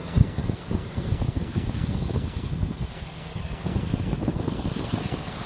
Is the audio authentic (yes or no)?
no